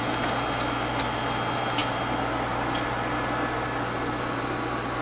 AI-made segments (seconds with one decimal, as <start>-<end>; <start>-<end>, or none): none